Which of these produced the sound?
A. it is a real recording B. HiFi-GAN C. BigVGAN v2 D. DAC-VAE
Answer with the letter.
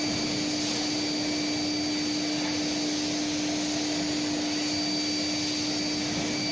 A